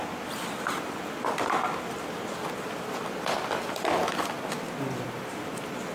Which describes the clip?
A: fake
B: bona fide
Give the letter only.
B